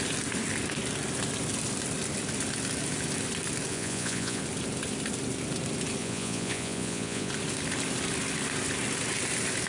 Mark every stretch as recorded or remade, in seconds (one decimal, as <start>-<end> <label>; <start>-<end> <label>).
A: 0.0-3.7 recorded; 3.7-4.4 remade; 4.4-6.0 recorded; 6.0-7.3 remade; 7.3-9.7 recorded